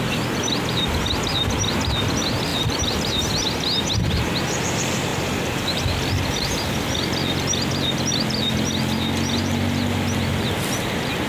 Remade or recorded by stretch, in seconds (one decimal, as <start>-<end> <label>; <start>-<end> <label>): 0.0-11.3 recorded